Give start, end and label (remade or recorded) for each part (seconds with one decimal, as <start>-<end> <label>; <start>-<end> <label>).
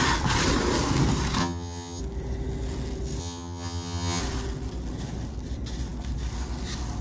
0.0-1.4 recorded; 1.4-2.0 remade; 2.0-3.2 recorded; 3.2-4.2 remade; 4.2-7.0 recorded